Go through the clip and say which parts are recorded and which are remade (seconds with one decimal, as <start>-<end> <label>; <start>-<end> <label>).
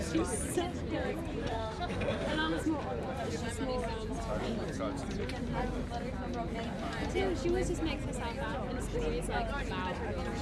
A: 0.0-1.4 recorded; 1.4-2.6 remade; 2.6-10.4 recorded